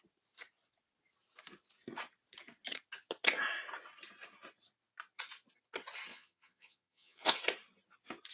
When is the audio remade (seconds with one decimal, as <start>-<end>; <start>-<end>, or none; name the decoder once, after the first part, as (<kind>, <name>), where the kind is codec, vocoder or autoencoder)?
6.1-7.4 (vocoder, Vocos)